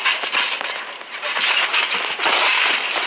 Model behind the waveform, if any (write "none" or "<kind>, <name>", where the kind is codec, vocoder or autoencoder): none